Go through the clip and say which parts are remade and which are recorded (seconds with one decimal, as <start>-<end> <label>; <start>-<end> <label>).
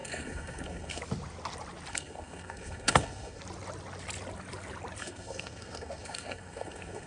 0.0-1.0 remade; 1.0-1.9 recorded; 1.9-3.4 remade; 3.4-5.0 recorded; 5.0-7.1 remade